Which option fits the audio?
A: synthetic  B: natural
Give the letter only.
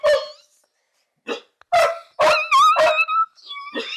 B